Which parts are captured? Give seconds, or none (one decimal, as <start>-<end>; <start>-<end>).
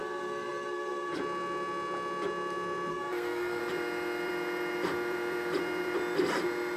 1.1-2.9; 3.6-6.8